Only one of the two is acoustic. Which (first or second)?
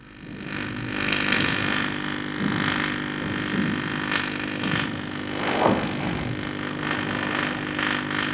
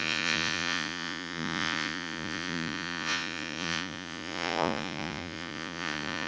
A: first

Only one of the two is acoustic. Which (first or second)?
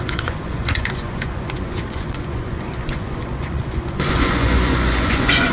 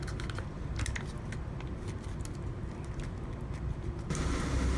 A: second